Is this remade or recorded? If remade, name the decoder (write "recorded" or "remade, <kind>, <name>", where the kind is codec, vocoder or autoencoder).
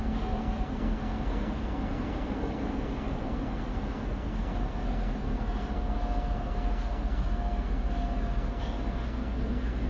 remade, codec, SNAC